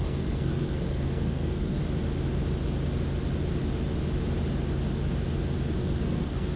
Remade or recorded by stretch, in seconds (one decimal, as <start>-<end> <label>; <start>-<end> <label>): 0.0-1.8 remade; 1.8-5.8 recorded; 5.8-6.6 remade